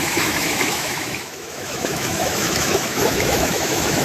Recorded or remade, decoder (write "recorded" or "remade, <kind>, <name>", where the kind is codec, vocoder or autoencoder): remade, autoencoder, DAC-VAE